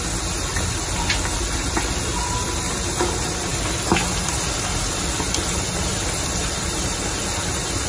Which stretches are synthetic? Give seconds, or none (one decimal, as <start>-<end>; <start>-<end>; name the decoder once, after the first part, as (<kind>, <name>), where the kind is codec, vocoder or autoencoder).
0.5-1.9 (vocoder, BigVGAN v2); 3.5-4.9; 5.9-7.2